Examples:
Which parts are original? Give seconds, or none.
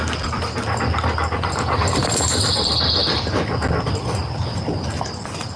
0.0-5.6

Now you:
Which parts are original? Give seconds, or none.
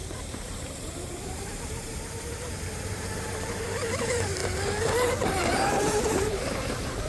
4.4-5.2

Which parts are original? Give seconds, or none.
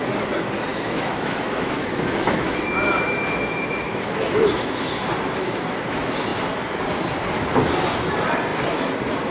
0.0-0.7; 4.8-9.3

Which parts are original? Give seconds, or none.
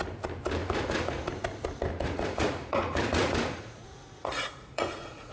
0.0-0.6; 1.3-1.9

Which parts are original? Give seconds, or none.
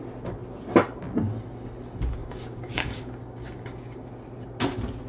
0.0-2.2; 4.1-5.1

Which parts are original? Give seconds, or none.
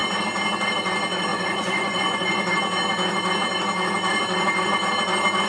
0.0-1.3; 2.5-5.5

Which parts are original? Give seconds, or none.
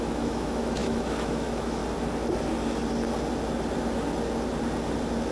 1.8-5.3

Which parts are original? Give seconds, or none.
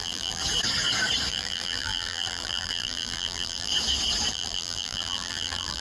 0.4-1.3; 3.7-4.3